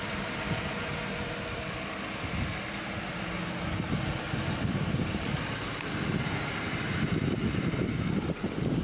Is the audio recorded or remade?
recorded